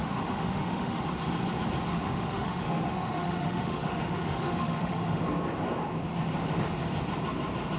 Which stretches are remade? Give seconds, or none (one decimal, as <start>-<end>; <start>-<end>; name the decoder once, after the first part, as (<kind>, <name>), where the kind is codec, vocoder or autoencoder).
0.0-1.0 (autoencoder, DAC-VAE); 1.9-5.2